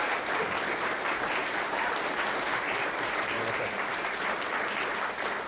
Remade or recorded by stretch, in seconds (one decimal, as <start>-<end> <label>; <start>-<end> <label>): 0.0-1.4 recorded; 1.4-4.5 remade; 4.5-5.5 recorded